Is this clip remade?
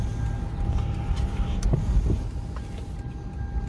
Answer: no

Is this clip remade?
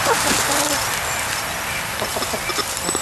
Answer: no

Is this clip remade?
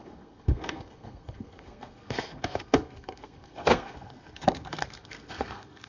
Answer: yes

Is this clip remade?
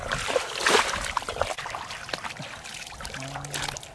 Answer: no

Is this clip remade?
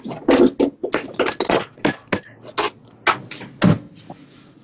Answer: no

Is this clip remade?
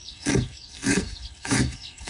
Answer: yes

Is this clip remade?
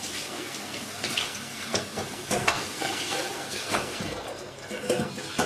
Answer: yes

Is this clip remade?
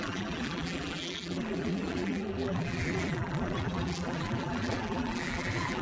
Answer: yes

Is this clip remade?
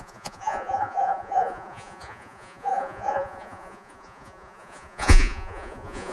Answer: yes